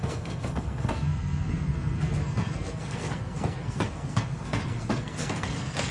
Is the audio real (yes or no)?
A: no